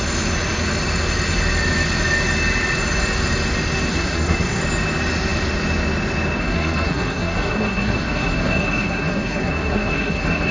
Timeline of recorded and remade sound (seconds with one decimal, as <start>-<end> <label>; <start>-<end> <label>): 0.0-3.9 recorded; 3.9-4.6 remade; 4.6-6.4 recorded; 6.4-10.5 remade